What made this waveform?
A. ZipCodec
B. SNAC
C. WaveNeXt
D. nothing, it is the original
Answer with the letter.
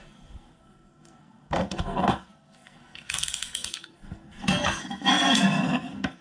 B